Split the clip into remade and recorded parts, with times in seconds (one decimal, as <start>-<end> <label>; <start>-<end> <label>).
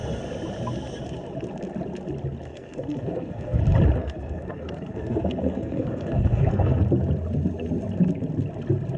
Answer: 0.0-2.5 recorded; 2.5-3.6 remade; 3.6-4.0 recorded; 4.0-6.8 remade; 6.8-9.0 recorded